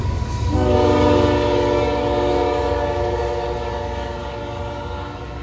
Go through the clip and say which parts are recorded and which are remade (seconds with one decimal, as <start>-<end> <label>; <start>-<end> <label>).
0.0-5.4 remade